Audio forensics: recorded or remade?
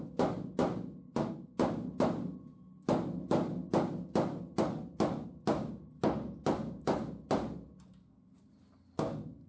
recorded